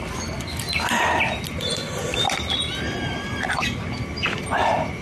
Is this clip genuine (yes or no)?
no